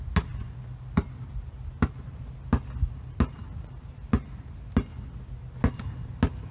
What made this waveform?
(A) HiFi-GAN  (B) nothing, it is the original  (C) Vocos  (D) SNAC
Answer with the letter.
B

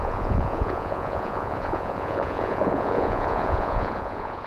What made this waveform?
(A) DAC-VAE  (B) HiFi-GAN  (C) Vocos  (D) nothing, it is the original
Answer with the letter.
C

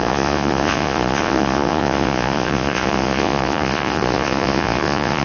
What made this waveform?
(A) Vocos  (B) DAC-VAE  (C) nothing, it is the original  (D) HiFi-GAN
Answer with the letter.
A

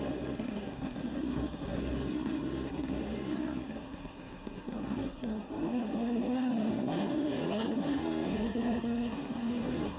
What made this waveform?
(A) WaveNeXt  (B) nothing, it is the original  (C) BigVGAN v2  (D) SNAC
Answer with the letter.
D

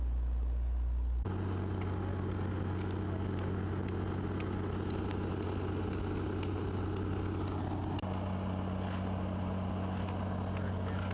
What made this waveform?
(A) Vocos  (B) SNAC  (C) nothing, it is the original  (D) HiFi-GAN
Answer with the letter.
C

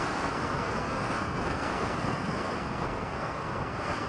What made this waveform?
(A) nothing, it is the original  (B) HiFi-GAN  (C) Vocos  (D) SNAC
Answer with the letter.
D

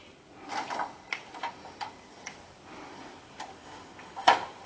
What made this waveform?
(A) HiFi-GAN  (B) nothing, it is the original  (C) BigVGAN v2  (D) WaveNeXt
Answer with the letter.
C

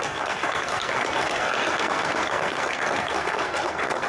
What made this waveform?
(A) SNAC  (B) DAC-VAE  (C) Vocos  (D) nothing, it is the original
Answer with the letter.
A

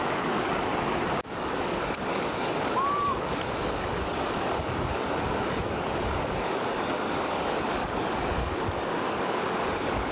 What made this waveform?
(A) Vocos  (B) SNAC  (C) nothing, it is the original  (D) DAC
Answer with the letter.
D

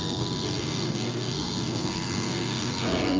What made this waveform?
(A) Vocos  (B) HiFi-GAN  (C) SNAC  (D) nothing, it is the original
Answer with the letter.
C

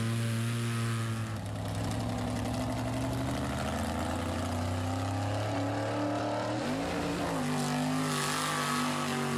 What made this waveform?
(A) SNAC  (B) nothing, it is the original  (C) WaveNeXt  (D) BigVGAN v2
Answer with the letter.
B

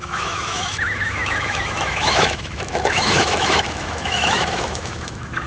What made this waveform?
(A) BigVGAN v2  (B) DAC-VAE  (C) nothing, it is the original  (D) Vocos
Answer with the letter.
B